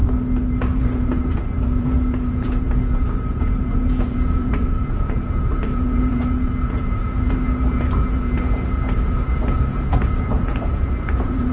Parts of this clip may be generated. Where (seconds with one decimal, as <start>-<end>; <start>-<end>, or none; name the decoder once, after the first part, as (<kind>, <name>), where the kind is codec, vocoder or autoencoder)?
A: 0.6-11.5 (vocoder, Vocos)